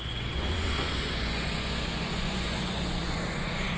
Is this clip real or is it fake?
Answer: fake